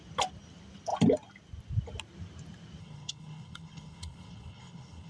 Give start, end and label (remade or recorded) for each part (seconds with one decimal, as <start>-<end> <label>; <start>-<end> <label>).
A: 0.0-2.8 recorded; 2.8-5.1 remade